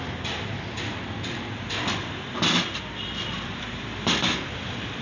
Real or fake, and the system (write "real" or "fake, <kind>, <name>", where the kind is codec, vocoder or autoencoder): real